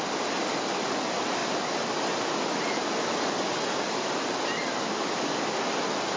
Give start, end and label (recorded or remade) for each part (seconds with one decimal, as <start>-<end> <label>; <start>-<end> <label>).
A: 0.0-6.2 recorded